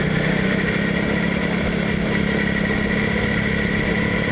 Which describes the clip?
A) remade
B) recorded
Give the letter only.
B